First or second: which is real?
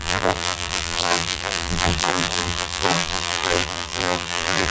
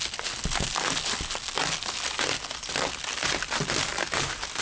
second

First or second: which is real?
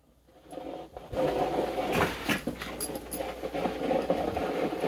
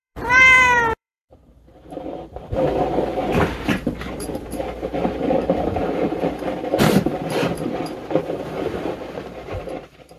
first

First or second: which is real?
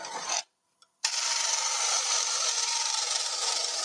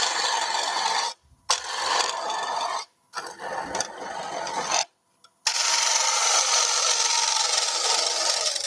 second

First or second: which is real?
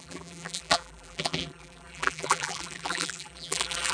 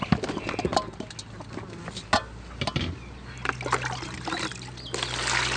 second